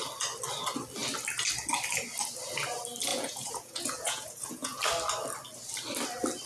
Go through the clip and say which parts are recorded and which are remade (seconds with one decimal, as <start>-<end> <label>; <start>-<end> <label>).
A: 0.0-3.1 recorded; 3.1-4.8 remade; 4.8-6.5 recorded